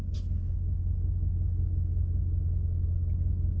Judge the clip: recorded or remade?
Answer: recorded